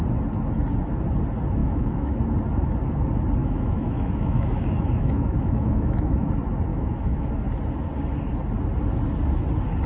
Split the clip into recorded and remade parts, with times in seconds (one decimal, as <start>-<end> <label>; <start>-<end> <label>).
0.0-1.6 recorded; 1.6-2.2 remade; 2.2-3.4 recorded; 3.4-6.3 remade; 6.3-6.7 recorded; 6.7-7.3 remade; 7.3-9.9 recorded